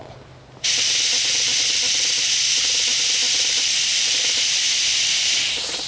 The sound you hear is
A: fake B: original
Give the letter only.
B